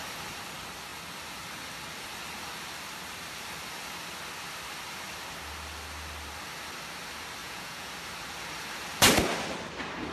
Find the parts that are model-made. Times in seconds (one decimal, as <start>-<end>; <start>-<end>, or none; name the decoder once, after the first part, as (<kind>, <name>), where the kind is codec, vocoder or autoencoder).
7.4-7.9 (vocoder, Vocos)